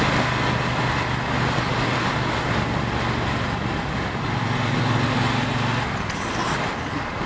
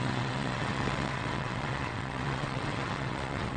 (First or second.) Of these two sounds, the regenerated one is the second